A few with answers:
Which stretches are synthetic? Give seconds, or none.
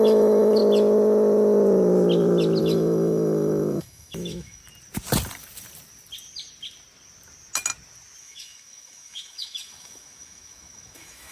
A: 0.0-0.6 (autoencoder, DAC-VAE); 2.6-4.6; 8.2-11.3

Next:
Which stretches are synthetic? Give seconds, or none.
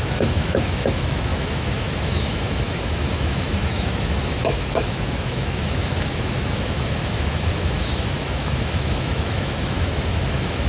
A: 0.0-10.7 (autoencoder, DAC-VAE)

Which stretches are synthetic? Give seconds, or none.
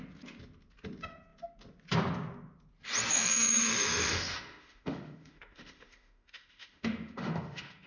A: 3.1-7.9 (autoencoder, DAC-VAE)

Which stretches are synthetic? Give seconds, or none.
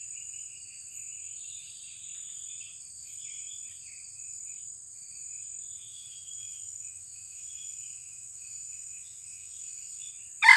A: 5.9-10.1 (autoencoder, DAC-VAE)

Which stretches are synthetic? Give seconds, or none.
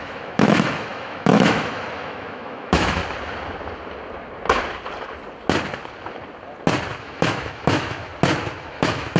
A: 0.0-3.0 (autoencoder, DAC-VAE); 7.0-8.1; 8.6-9.2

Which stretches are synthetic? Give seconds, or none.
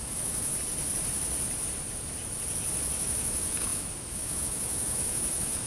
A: 0.0-0.5 (autoencoder, DAC-VAE); 3.0-5.7